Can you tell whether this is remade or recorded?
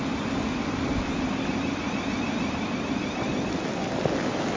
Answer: recorded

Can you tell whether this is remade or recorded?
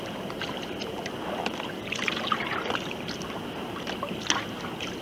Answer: recorded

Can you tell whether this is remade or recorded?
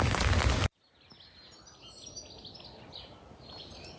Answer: recorded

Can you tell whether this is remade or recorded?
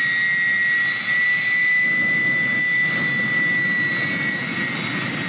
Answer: recorded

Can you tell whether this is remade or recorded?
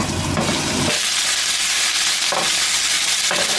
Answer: recorded